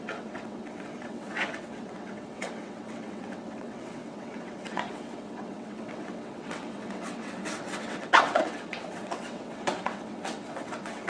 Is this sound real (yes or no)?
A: no